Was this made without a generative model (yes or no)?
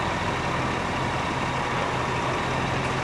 yes